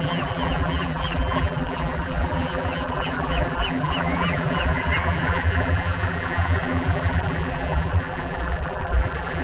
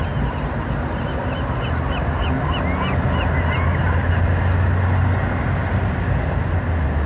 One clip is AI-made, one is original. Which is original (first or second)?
second